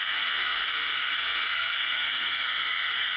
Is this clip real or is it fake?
fake